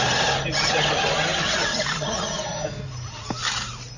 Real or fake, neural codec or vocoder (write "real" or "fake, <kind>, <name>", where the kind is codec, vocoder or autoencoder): real